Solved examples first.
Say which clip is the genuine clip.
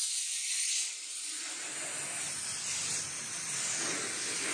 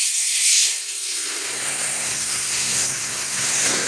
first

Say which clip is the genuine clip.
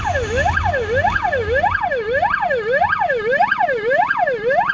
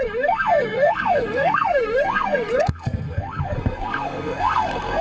first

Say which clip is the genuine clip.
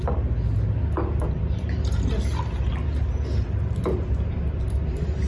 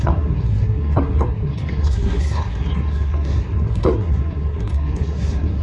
first